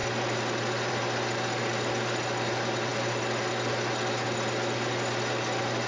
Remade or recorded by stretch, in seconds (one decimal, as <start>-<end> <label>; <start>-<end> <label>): 0.0-5.9 recorded